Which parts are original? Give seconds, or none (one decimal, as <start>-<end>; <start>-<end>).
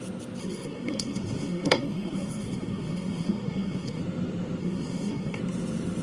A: 0.0-0.4; 4.0-4.6; 5.4-6.0